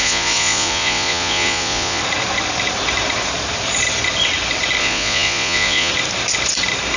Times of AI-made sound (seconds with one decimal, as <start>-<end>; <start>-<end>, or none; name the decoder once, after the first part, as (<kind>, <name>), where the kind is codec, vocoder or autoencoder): 0.0-2.0 (vocoder, Vocos); 4.8-5.9